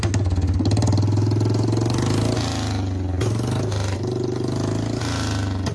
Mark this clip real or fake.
real